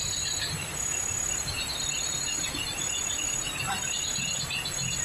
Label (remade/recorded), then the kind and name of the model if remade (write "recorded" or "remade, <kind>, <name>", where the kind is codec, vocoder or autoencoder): recorded